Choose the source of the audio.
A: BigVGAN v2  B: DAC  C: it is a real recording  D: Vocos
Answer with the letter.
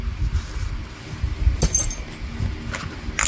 C